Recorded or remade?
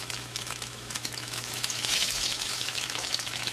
remade